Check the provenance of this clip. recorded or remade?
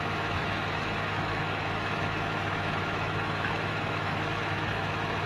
remade